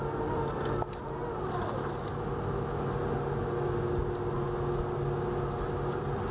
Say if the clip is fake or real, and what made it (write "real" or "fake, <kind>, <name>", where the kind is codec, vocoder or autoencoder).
real